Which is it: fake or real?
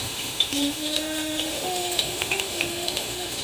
fake